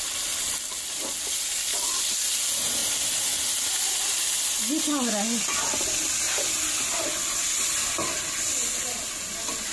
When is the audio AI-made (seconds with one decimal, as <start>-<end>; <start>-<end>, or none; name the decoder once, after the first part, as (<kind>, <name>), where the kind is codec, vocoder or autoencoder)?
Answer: none